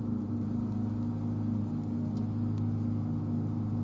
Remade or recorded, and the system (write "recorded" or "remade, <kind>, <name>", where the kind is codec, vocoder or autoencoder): recorded